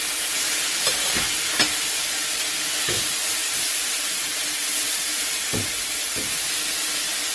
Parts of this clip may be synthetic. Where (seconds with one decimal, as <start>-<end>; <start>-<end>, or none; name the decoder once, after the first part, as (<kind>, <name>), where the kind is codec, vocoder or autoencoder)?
3.4-4.5 (vocoder, BigVGAN v2)